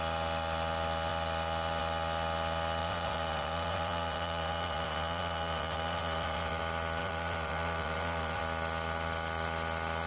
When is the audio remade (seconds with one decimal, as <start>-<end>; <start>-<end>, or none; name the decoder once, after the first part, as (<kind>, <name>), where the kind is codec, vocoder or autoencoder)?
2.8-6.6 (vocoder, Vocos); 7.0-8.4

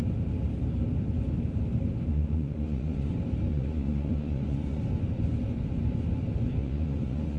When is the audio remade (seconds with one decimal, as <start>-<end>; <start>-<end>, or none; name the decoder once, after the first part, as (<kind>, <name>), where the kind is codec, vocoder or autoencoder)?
2.1-3.1 (vocoder, Vocos); 3.5-4.8; 6.6-7.4

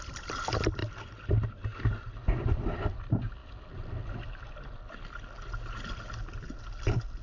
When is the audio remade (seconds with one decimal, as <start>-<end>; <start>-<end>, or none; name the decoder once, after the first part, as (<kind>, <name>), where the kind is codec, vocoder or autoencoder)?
none

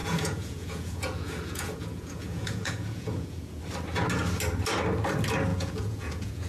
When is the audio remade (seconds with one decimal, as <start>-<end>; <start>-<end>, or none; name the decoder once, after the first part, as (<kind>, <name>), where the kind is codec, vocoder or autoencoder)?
0.0-3.6 (vocoder, Vocos); 5.5-6.5

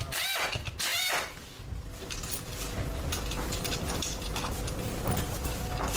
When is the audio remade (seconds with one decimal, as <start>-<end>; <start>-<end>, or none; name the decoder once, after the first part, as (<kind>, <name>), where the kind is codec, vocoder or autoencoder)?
none